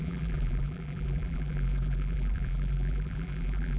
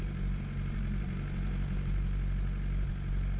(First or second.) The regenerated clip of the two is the first